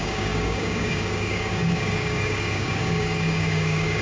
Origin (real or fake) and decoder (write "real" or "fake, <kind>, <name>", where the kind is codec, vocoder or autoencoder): fake, codec, DAC